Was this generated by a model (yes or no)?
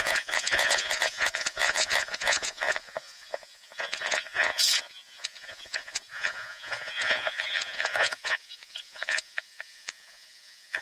yes